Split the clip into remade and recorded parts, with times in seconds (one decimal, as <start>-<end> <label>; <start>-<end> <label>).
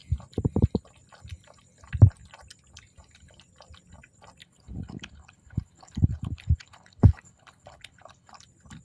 0.0-4.4 recorded; 4.4-8.4 remade; 8.4-8.8 recorded